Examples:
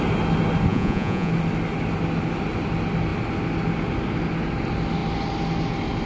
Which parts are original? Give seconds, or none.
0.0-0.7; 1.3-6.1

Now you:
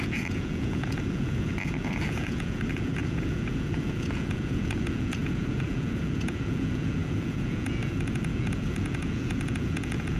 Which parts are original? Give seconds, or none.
none